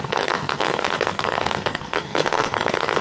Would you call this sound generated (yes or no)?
yes